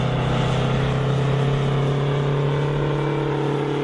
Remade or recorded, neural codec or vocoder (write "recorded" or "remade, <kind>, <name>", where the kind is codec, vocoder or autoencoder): recorded